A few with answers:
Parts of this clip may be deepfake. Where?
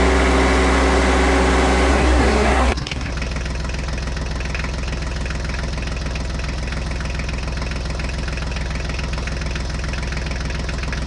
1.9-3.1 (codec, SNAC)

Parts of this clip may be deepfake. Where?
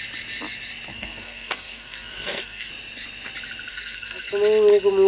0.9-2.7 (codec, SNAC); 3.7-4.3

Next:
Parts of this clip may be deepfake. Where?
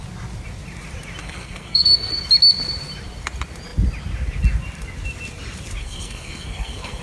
1.2-2.1 (codec, SNAC); 5.8-7.0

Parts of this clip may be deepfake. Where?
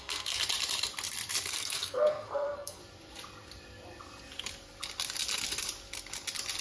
0.0-0.4 (codec, SNAC); 1.5-2.8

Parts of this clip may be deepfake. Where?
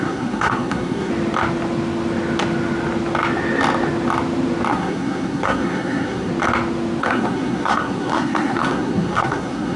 0.0-1.1 (codec, SNAC); 4.7-6.3; 7.0-9.8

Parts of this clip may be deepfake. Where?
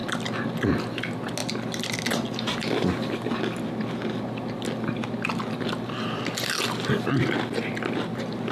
none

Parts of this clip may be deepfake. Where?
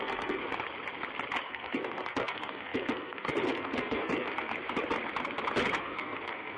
0.0-0.4 (codec, SNAC); 1.4-4.5; 5.8-6.6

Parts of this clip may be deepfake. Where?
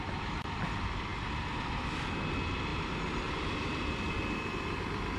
none